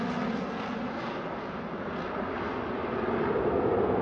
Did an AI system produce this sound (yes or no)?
no